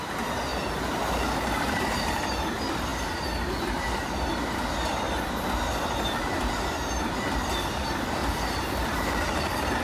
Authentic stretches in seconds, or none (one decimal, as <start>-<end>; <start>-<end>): 0.0-0.5; 2.2-8.2; 9.1-9.8